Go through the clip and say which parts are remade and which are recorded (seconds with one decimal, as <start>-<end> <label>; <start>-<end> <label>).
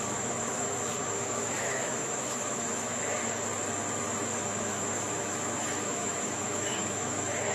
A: 0.0-3.2 remade; 3.2-4.2 recorded; 4.2-7.5 remade